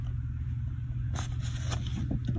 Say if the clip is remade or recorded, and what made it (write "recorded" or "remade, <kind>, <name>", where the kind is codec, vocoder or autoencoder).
recorded